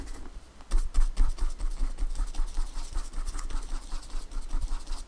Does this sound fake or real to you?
fake